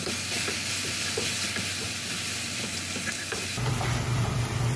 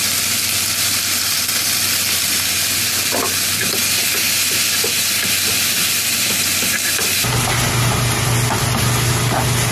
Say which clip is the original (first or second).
second